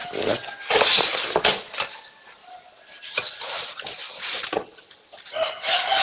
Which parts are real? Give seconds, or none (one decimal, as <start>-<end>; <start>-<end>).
0.0-2.4; 4.1-6.0